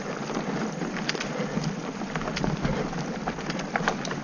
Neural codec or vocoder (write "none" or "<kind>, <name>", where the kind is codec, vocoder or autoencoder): none